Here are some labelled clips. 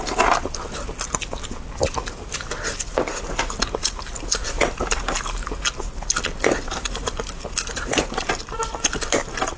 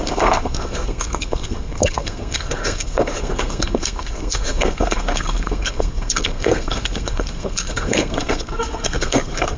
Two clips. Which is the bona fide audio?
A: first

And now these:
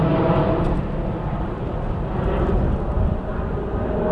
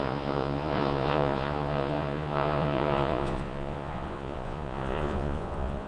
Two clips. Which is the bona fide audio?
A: first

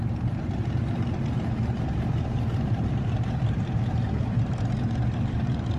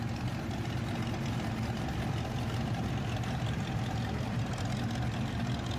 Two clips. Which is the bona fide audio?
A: second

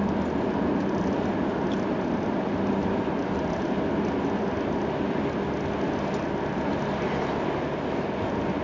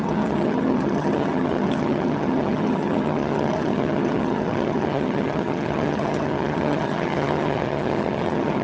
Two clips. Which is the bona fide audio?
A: first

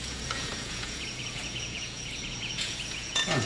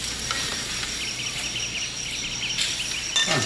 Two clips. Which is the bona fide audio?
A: second